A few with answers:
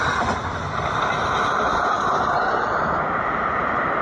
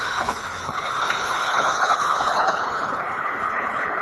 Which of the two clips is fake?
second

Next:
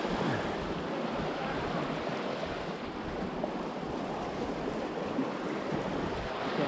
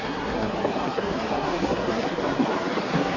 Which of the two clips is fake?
second